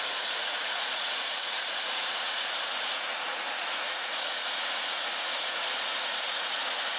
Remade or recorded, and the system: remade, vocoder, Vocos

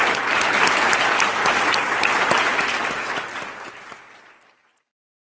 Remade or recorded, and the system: recorded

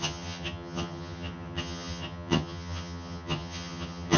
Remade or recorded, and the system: remade, vocoder, HiFi-GAN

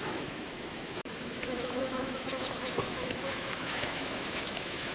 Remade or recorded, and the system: remade, autoencoder, DAC-VAE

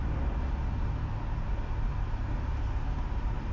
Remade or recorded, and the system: recorded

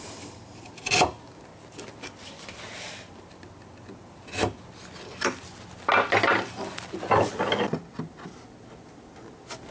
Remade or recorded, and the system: recorded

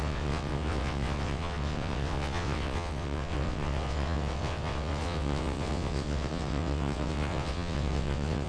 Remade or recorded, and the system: remade, vocoder, WaveNeXt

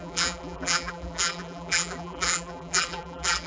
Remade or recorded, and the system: remade, vocoder, BigVGAN v2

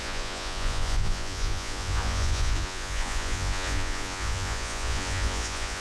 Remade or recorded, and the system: remade, vocoder, Vocos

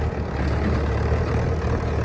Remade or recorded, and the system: recorded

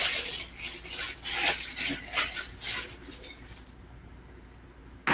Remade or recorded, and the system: recorded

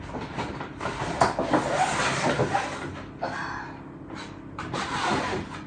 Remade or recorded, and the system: recorded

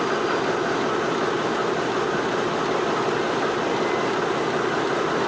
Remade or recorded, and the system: recorded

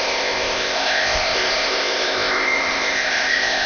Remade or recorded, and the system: remade, codec, ZipCodec